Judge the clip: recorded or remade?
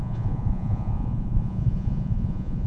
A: remade